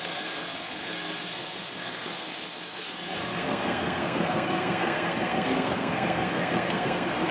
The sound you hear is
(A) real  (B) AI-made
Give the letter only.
B